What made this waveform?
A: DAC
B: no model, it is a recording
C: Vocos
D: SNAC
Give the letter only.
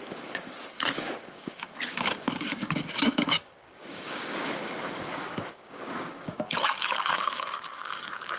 A